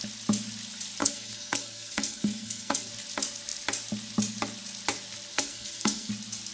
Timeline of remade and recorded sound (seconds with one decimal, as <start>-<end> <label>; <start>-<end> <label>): 0.0-1.0 recorded; 1.0-2.9 remade; 2.9-5.3 recorded; 5.3-6.1 remade; 6.1-6.5 recorded

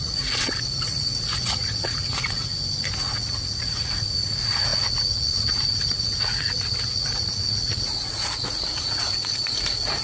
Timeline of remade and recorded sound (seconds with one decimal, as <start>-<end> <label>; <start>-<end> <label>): 0.0-2.5 remade; 2.5-3.0 recorded; 3.0-10.0 remade

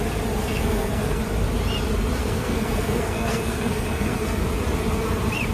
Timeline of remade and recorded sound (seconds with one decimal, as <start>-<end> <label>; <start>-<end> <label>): 0.0-0.4 recorded; 0.4-1.2 remade; 1.2-2.2 recorded; 2.2-4.4 remade; 4.4-5.5 recorded

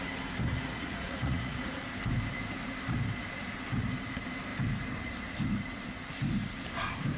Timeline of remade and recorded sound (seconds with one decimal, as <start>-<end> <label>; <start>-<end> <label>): 0.0-0.5 recorded; 0.5-1.8 remade; 1.8-7.2 recorded

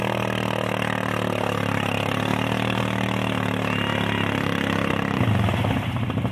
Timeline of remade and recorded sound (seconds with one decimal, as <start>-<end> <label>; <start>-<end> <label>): 0.0-2.3 recorded; 2.3-2.8 remade; 2.8-6.3 recorded